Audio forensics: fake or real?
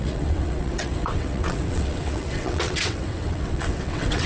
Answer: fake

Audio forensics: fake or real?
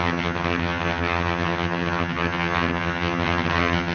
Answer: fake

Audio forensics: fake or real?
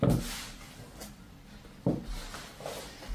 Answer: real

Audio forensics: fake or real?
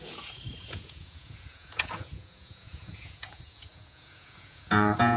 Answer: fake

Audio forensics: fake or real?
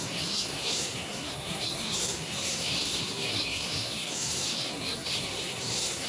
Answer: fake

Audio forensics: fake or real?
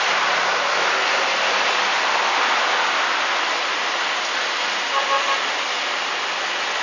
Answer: real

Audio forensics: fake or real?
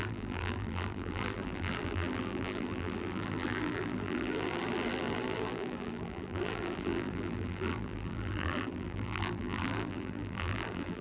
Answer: fake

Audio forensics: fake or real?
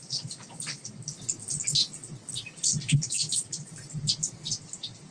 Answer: real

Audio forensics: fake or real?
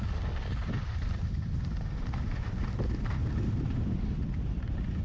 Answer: real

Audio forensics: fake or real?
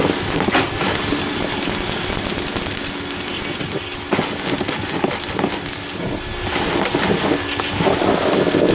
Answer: real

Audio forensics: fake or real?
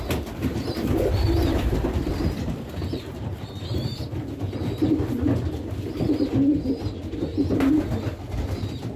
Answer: real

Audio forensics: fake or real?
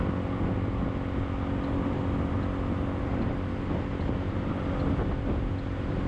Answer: real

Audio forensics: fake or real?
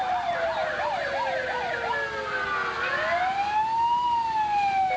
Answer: real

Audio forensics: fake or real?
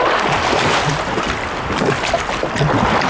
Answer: real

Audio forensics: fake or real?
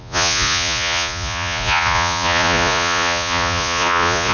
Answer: fake